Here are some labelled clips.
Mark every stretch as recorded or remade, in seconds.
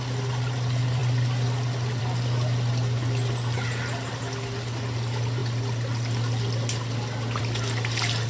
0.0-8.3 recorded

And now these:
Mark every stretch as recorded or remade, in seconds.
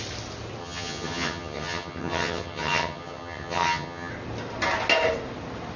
0.0-0.6 recorded; 0.6-4.1 remade; 4.1-5.8 recorded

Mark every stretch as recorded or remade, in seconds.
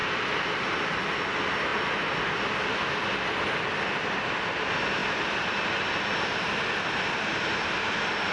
0.0-8.3 recorded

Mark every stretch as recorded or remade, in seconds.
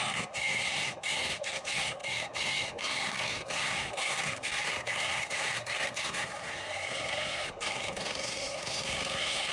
0.0-9.5 remade